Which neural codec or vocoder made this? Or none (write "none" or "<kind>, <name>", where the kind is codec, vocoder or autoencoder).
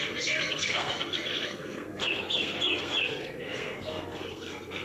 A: codec, SNAC